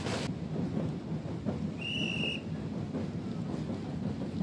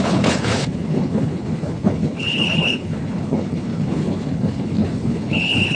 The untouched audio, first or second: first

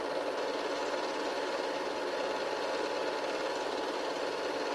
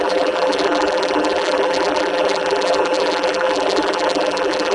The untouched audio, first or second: first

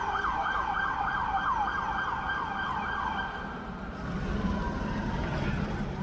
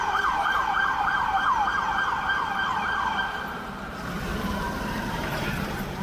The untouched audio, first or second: first